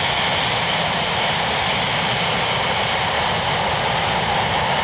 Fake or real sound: real